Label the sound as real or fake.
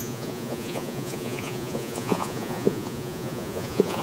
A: fake